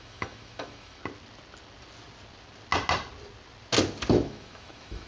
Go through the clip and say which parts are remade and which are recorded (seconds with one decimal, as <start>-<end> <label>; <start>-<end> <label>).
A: 0.0-1.0 remade; 1.0-4.1 recorded; 4.1-5.1 remade